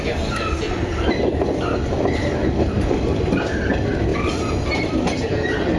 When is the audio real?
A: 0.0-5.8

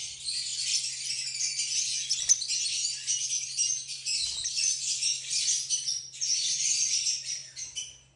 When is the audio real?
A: 0.0-8.2